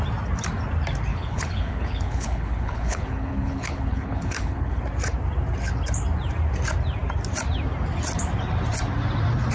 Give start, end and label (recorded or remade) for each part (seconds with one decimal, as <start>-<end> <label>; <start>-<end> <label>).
0.0-1.1 recorded; 1.1-4.8 remade; 4.8-9.5 recorded